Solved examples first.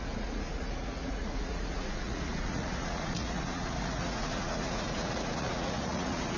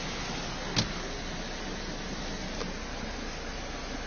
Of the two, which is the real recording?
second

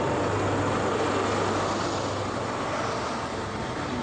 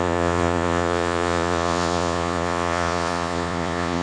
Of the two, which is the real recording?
first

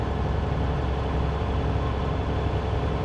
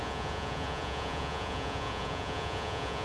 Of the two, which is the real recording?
first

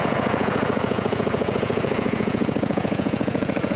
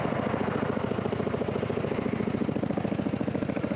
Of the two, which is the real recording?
second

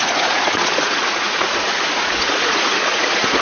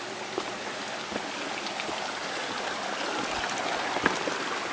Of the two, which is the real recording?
second